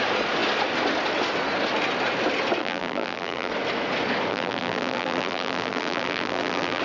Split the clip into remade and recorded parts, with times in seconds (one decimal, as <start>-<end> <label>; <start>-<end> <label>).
0.0-2.6 recorded; 2.6-3.5 remade; 3.5-4.3 recorded; 4.3-6.8 remade